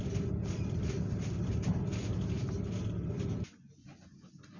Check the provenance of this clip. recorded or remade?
recorded